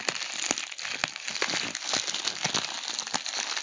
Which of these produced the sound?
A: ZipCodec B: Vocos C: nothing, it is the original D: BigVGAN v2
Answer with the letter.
C